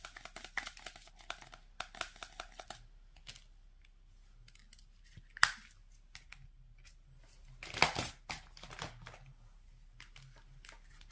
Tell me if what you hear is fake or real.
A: real